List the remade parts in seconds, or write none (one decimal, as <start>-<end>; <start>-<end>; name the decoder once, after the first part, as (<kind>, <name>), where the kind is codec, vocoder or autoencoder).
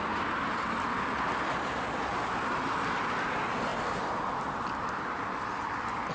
none